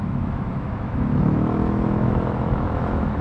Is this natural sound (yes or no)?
no